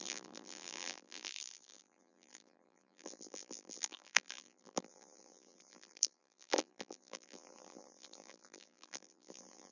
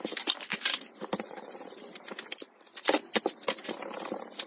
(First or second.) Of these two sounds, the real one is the second